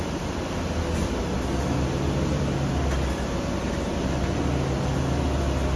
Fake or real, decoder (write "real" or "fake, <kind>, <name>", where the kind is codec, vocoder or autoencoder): real